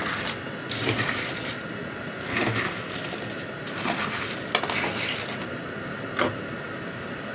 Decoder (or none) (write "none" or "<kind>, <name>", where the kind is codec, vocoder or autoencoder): none